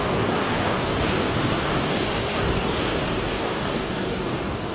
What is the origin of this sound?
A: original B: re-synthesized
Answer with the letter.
B